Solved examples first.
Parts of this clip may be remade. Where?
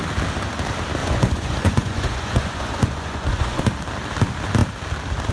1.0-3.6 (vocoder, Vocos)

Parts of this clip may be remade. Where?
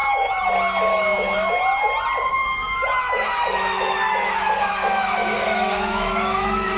0.0-0.5 (autoencoder, DAC-VAE); 0.9-1.5; 2.4-6.8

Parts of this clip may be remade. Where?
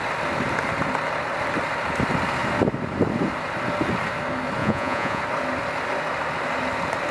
4.6-5.2 (vocoder, Vocos)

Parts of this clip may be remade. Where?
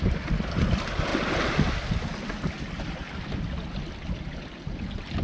none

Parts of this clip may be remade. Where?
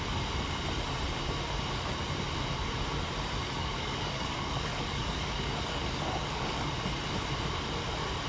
3.6-6.7 (codec, DAC)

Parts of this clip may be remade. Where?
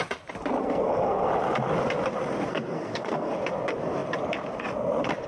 0.6-1.3 (codec, SNAC); 2.5-3.3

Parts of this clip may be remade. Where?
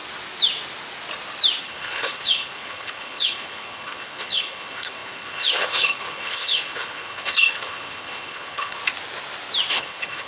1.6-8.8 (codec, HILCodec); 9.7-10.3